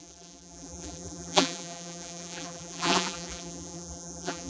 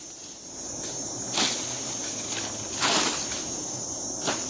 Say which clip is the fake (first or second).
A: first